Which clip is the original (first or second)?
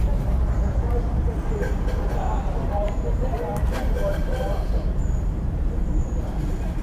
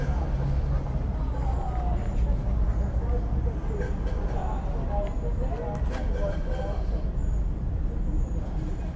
second